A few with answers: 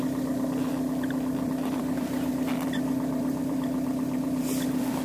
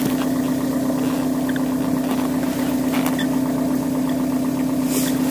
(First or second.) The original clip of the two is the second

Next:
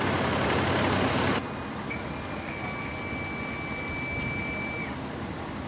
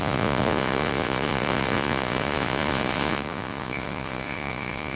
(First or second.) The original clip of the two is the first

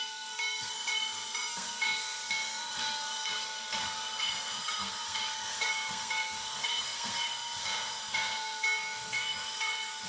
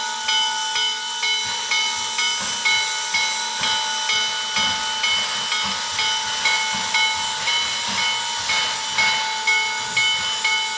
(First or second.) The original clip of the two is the second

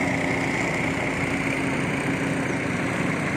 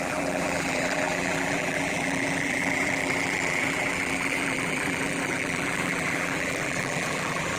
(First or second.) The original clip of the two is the first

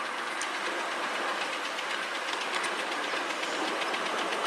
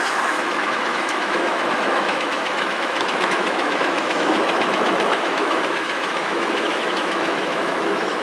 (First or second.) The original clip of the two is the first